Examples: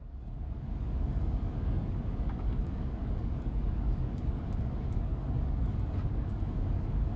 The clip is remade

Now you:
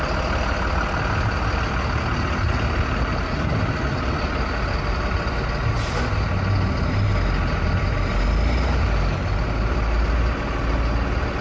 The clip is recorded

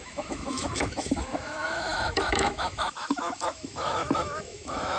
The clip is remade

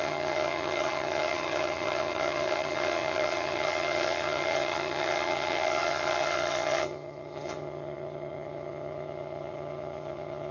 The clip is remade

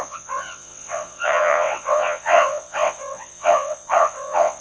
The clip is remade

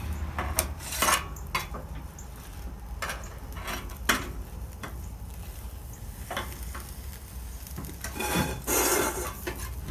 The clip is recorded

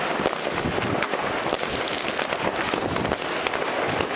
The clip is recorded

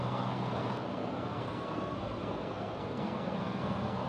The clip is remade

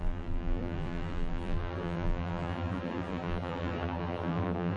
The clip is remade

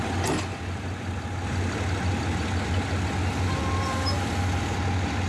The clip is recorded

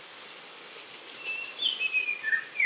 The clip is remade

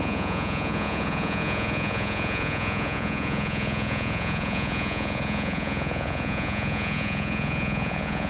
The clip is remade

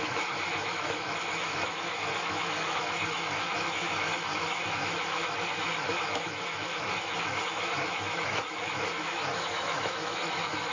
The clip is remade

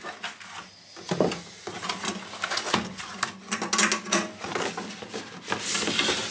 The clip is recorded